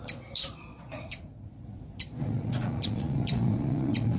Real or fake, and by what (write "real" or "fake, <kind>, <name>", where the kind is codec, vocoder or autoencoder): fake, vocoder, Vocos